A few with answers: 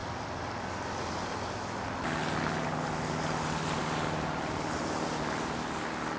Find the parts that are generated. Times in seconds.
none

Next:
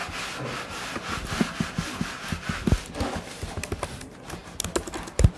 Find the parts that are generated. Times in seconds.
none

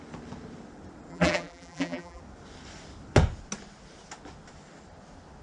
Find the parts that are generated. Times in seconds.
1.1-2.2